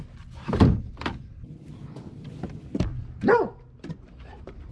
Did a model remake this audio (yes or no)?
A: no